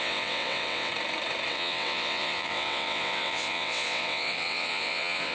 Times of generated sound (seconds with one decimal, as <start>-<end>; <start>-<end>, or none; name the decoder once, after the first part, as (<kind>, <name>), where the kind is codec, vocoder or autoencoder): 0.0-0.9 (vocoder, WaveNeXt); 1.5-5.3